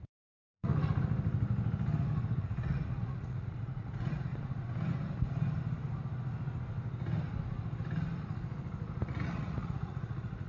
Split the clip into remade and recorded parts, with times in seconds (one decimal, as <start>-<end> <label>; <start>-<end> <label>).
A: 0.0-0.7 remade; 0.7-2.4 recorded; 2.4-4.3 remade; 4.3-9.0 recorded; 9.0-10.5 remade